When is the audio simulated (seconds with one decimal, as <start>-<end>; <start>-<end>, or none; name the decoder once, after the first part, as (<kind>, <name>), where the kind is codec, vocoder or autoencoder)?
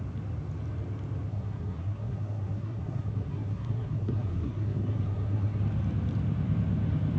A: 1.3-5.6 (codec, SNAC)